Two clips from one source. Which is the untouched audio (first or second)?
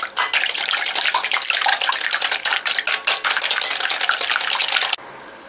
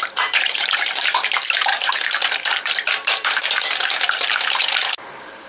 first